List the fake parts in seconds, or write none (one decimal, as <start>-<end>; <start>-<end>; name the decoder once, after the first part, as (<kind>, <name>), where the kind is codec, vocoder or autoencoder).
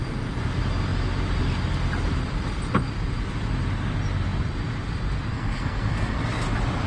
5.3-6.3 (codec, SNAC)